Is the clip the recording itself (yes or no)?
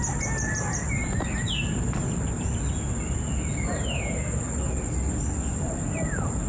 yes